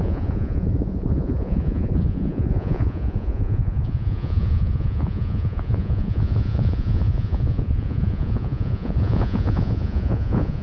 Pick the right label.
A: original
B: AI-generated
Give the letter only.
B